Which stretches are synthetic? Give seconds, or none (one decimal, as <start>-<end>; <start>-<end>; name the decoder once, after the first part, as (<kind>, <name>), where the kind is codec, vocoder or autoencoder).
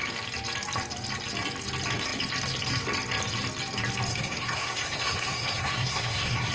4.1-6.5 (codec, SNAC)